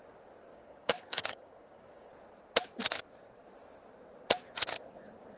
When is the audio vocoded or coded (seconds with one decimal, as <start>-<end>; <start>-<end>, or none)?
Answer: 0.5-2.1